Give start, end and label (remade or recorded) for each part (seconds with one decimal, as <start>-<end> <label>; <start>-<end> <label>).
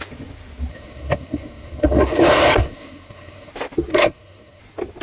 0.0-0.7 recorded; 0.7-3.5 remade; 3.5-3.9 recorded; 3.9-4.6 remade; 4.6-5.0 recorded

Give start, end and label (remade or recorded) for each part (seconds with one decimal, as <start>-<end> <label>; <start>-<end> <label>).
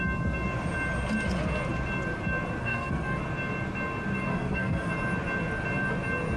0.0-2.6 recorded; 2.6-3.2 remade; 3.2-4.3 recorded; 4.3-4.9 remade; 4.9-6.4 recorded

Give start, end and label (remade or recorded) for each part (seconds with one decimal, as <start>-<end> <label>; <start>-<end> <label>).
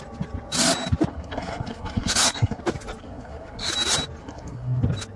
0.0-1.1 recorded; 1.1-2.6 remade; 2.6-3.0 recorded; 3.0-3.7 remade; 3.7-4.2 recorded; 4.2-4.8 remade; 4.8-5.2 recorded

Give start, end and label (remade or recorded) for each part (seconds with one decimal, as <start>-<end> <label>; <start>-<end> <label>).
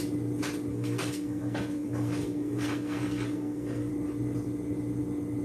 0.0-0.7 recorded; 0.7-3.9 remade; 3.9-5.4 recorded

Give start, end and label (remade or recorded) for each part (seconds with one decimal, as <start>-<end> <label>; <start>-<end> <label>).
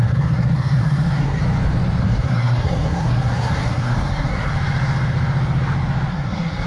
0.0-1.4 remade; 1.4-2.0 recorded; 2.0-4.5 remade; 4.5-6.1 recorded; 6.1-6.7 remade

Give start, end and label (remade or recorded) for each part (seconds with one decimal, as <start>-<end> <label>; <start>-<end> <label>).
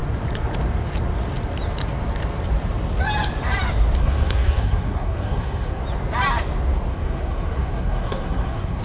0.0-4.0 recorded; 4.0-5.8 remade; 5.8-6.9 recorded; 6.9-8.8 remade